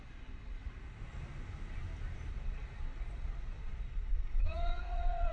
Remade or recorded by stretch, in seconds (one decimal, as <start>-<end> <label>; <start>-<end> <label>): 0.0-0.6 remade; 0.6-2.3 recorded; 2.3-5.3 remade